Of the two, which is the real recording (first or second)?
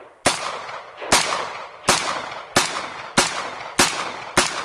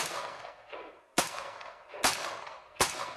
first